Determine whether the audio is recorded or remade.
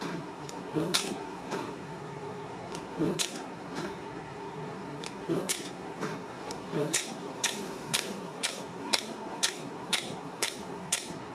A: remade